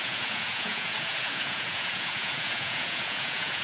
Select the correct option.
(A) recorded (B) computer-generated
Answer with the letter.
B